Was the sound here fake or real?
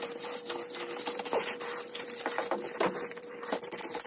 fake